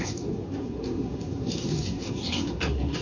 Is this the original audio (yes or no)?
no